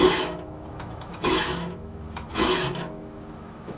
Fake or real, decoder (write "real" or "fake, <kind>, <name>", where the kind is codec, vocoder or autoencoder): fake, autoencoder, DAC-VAE